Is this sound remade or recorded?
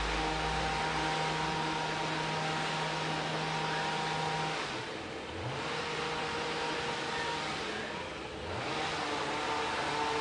recorded